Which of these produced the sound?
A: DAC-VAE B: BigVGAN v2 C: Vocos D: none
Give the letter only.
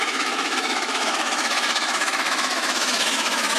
A